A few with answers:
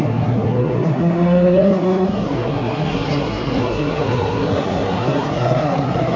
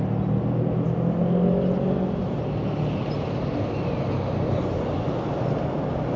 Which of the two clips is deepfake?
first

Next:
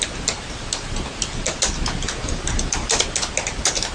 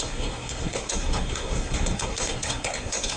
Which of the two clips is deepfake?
second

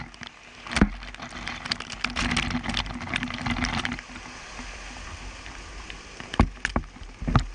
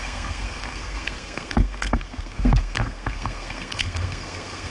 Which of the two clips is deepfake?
second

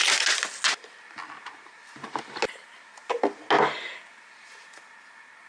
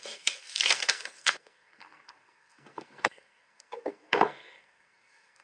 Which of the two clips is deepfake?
second